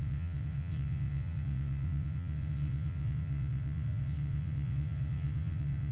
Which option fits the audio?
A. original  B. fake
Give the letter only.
B